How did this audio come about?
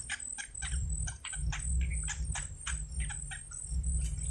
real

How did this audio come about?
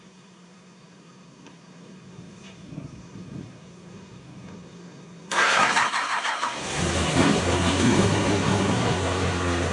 fake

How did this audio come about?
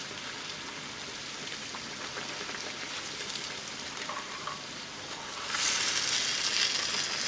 real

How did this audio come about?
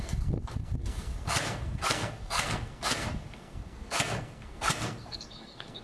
fake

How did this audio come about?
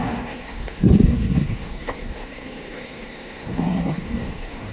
fake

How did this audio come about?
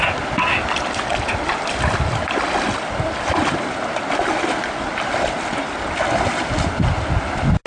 real